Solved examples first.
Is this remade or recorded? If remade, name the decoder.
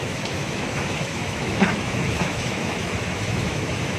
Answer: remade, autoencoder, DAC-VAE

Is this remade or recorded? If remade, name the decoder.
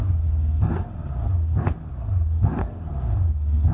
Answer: remade, codec, SNAC